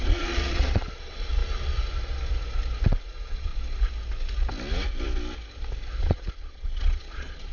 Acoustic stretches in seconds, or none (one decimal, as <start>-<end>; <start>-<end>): 1.4-2.9; 3.5-6.0